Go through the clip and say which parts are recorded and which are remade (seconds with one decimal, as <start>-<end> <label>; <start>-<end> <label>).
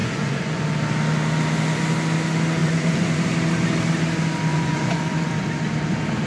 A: 0.0-0.6 remade; 0.6-2.6 recorded; 2.6-3.2 remade; 3.2-4.5 recorded; 4.5-5.3 remade; 5.3-6.3 recorded